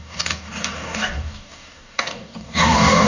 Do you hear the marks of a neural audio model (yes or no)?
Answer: yes